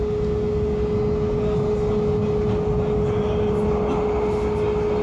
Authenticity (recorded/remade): recorded